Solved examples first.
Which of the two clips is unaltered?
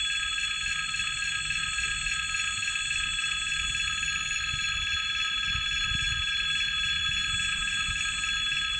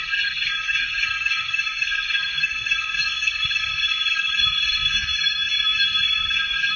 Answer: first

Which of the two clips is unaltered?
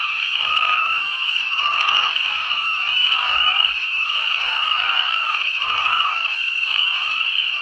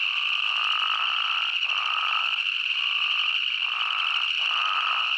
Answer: second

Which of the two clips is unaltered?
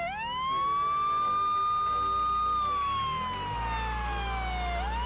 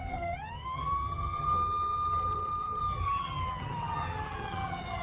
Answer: first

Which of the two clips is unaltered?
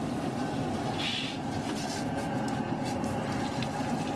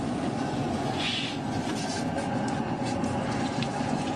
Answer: first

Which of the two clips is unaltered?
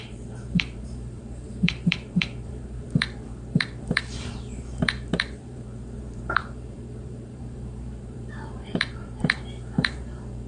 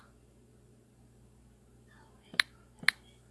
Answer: second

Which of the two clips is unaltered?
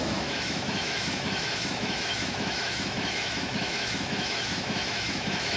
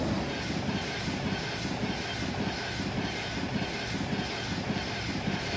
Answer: second